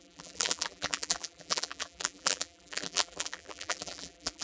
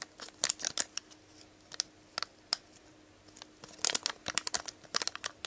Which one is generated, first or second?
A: first